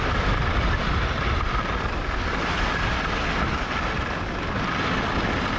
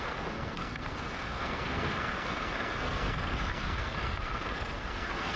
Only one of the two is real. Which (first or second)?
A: first